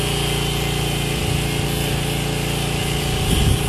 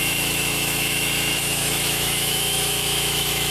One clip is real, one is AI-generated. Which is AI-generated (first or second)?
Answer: second